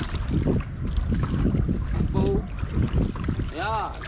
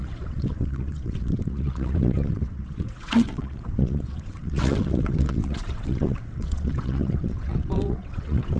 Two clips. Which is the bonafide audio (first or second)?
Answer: first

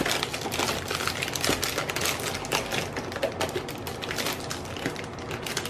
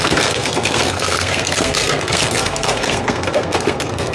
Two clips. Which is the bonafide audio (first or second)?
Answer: first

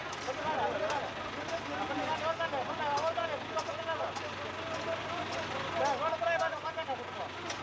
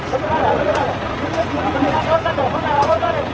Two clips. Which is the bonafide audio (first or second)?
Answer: first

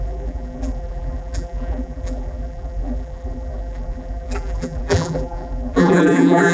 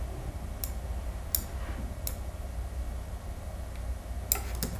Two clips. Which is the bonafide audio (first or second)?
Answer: second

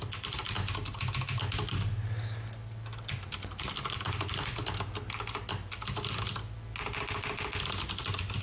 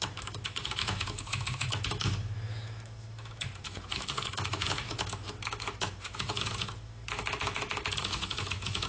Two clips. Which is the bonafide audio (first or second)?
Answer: first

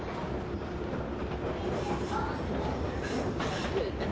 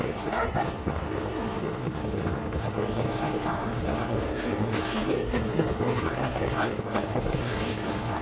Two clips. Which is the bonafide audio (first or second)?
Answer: first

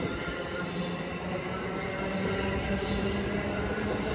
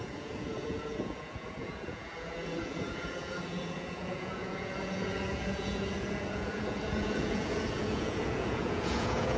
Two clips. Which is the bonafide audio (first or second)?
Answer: first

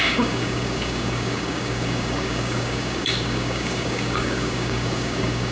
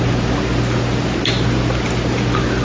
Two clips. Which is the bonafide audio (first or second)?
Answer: second